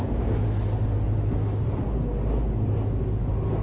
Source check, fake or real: real